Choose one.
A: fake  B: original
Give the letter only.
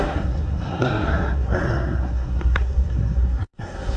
A